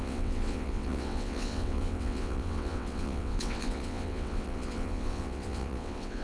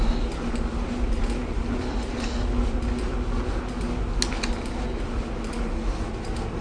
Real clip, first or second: second